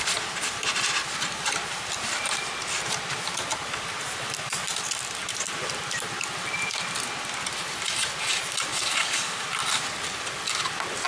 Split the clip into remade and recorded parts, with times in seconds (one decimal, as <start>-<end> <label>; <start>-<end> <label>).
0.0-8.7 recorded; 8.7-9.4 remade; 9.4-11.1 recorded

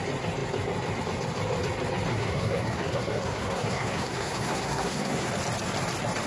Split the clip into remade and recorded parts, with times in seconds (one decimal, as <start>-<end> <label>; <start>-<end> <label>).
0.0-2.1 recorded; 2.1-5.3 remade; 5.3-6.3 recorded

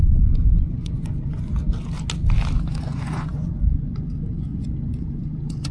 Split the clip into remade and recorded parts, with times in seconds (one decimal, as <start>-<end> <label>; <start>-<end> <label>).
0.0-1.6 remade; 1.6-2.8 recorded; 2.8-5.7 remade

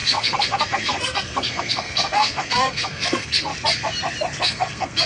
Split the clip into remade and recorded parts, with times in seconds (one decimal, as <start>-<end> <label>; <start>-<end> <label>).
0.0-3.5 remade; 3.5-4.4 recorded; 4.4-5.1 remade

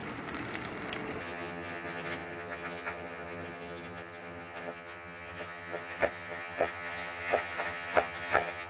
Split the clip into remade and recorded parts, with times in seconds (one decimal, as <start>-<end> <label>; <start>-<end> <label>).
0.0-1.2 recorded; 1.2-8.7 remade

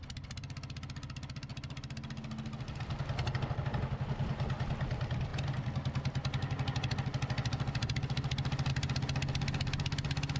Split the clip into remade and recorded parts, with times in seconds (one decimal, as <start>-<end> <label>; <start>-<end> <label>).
0.0-10.4 recorded

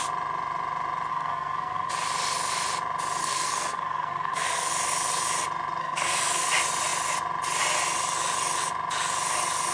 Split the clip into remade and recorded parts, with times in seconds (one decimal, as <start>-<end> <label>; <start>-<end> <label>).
0.0-1.1 recorded; 1.1-1.9 remade; 1.9-3.2 recorded; 3.2-4.7 remade; 4.7-5.8 recorded; 5.8-6.5 remade; 6.5-9.7 recorded